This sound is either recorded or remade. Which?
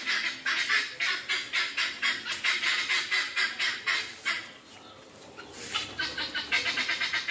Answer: recorded